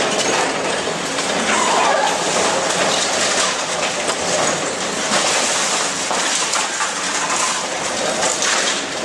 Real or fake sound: fake